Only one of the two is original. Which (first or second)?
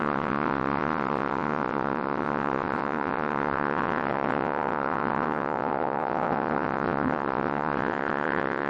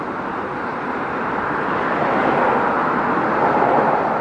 second